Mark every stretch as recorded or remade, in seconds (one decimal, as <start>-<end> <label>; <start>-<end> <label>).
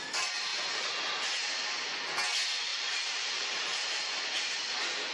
0.0-0.5 recorded; 0.5-1.2 remade; 1.2-2.7 recorded; 2.7-3.9 remade; 3.9-5.1 recorded